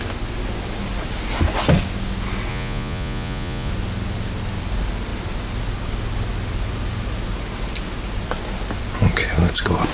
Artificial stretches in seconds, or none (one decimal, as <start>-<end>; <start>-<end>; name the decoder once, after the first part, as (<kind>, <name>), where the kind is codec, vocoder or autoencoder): 2.5-3.7 (vocoder, Vocos)